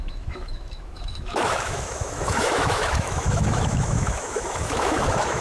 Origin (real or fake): fake